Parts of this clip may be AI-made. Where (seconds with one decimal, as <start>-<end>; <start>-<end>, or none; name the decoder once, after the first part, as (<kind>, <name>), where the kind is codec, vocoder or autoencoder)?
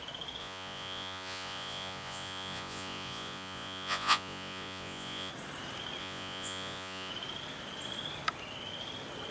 0.4-5.3 (vocoder, Vocos); 6.0-7.1